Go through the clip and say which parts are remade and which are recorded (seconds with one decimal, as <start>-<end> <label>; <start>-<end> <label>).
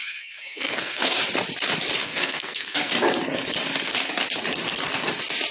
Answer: 0.0-1.2 remade; 1.2-2.0 recorded; 2.0-2.9 remade; 2.9-5.5 recorded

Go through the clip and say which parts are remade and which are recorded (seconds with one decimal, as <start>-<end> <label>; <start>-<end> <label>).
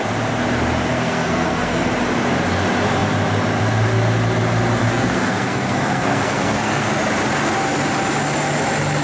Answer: 0.0-0.9 recorded; 0.9-1.9 remade; 1.9-4.8 recorded; 4.8-6.9 remade; 6.9-9.0 recorded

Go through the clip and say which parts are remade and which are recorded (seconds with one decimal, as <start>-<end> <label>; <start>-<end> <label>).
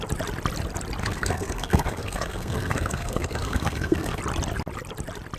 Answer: 0.0-1.0 recorded; 1.0-4.2 remade; 4.2-5.4 recorded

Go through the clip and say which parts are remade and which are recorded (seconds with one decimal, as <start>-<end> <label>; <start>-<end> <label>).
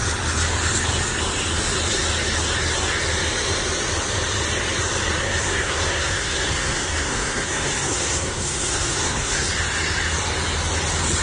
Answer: 0.0-5.2 recorded; 5.2-9.5 remade; 9.5-11.2 recorded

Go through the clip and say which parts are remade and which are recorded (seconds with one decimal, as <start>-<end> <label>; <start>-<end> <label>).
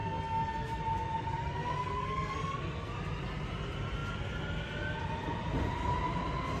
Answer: 0.0-0.8 remade; 0.8-1.4 recorded; 1.4-2.9 remade; 2.9-6.6 recorded